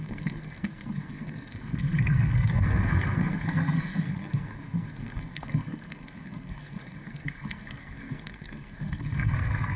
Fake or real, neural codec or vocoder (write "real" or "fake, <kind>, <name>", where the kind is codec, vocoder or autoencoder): fake, codec, SNAC